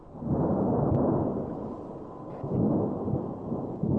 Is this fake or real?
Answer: real